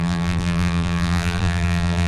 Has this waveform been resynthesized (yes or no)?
yes